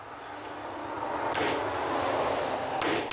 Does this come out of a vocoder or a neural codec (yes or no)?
no